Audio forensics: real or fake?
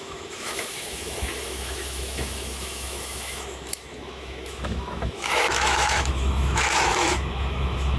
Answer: fake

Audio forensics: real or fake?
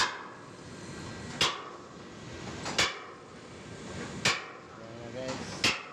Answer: real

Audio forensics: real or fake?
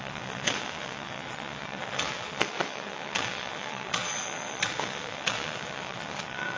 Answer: fake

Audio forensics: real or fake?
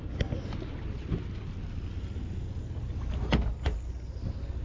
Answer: real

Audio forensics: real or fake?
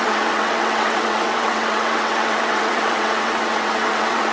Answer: fake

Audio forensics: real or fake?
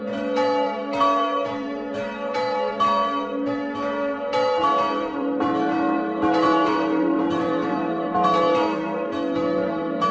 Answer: fake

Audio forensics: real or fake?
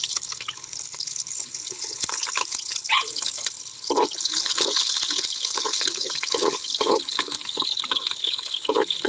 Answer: fake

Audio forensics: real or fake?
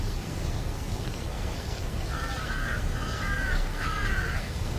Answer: fake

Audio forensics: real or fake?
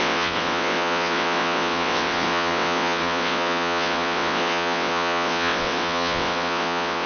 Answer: fake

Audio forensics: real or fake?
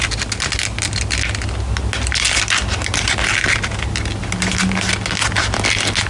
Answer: real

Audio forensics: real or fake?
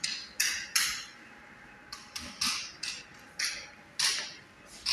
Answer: real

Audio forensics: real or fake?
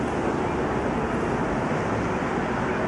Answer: real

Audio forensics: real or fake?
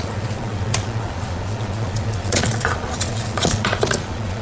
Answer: fake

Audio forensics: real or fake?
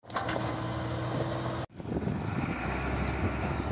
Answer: real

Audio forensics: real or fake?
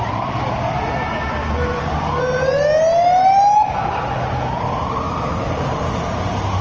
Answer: real